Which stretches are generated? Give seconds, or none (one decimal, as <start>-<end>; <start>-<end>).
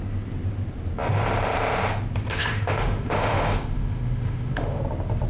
2.3-4.8